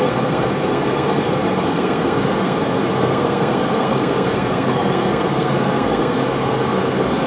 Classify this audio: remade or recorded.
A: remade